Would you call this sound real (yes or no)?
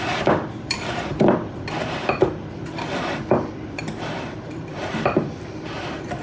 no